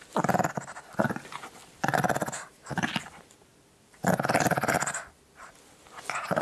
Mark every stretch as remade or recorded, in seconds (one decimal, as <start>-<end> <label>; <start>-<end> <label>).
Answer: 0.0-6.4 recorded